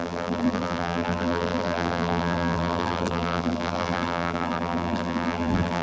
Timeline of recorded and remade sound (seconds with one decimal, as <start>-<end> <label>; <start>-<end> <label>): 0.0-5.8 remade